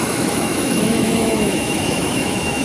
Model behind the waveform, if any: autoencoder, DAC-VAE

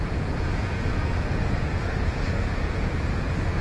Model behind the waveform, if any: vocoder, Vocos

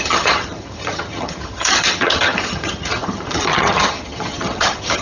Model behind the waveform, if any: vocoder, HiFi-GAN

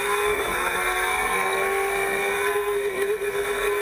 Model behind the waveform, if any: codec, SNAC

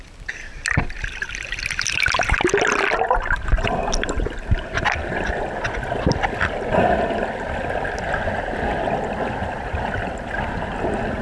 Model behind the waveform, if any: none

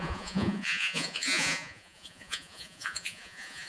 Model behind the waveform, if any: vocoder, Vocos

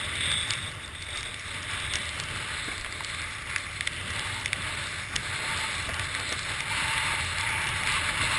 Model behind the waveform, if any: none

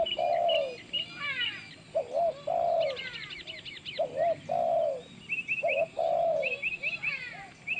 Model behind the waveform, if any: none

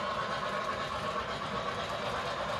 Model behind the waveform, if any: none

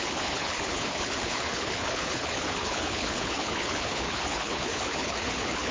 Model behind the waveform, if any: codec, HILCodec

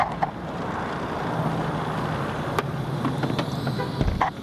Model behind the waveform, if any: none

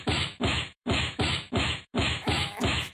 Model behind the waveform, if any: autoencoder, DAC-VAE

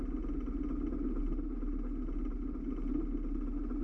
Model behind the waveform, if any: none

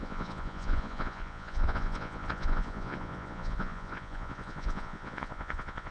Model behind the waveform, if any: vocoder, Vocos